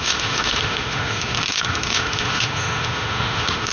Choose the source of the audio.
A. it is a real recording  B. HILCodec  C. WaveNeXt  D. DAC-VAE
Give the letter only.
D